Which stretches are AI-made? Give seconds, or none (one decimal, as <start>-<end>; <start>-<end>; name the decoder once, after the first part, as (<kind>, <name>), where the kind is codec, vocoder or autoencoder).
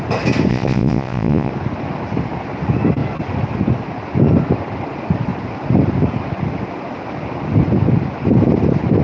0.5-1.5 (vocoder, Vocos)